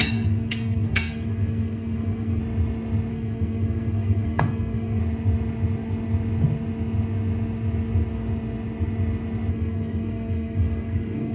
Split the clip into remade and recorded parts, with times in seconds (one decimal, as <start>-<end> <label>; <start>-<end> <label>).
0.0-2.4 remade; 2.4-3.1 recorded; 3.1-5.0 remade; 5.0-9.5 recorded; 9.5-11.3 remade